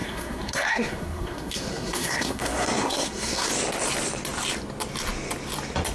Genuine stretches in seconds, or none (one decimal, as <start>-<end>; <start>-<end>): 3.5-5.9

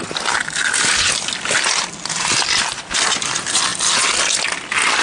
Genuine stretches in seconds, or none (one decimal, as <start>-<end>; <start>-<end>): 0.0-5.0

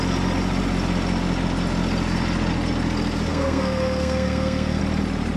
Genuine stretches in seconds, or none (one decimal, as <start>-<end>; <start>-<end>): 0.0-3.3; 4.8-5.4

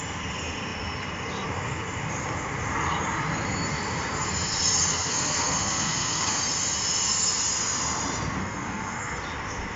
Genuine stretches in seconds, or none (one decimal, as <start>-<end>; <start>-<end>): 0.0-4.9; 6.4-8.4; 9.2-9.8

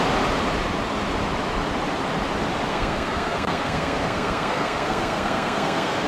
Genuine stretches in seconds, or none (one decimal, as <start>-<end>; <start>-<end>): 0.0-2.7

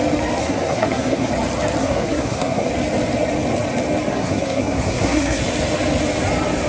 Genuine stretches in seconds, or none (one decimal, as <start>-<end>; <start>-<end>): 0.0-0.4; 1.3-1.8; 2.7-4.1; 5.4-6.7

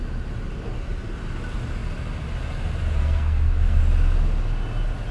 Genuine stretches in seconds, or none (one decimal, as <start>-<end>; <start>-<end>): 0.0-3.0; 3.8-5.1

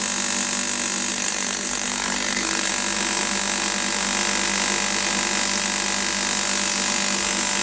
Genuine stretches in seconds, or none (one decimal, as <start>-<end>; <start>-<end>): 0.0-1.1; 2.7-7.6